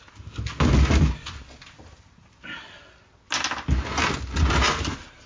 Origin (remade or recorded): recorded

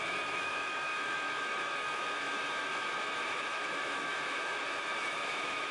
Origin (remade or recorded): remade